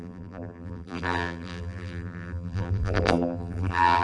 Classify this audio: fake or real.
fake